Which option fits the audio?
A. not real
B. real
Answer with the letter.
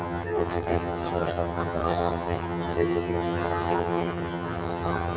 A